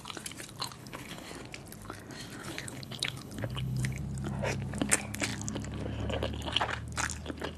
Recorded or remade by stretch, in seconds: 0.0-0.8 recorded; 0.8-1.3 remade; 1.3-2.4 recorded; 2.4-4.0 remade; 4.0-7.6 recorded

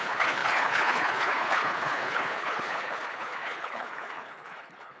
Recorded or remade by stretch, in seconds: 0.0-5.0 remade

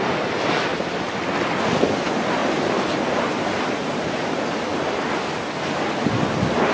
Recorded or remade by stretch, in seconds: 0.0-6.7 recorded

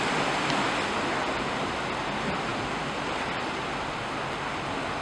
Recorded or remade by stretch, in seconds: 0.0-5.0 recorded

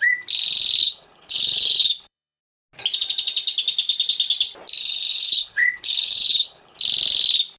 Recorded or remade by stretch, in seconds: 0.0-0.8 recorded; 0.8-2.4 remade; 2.4-4.8 recorded; 4.8-6.8 remade; 6.8-7.6 recorded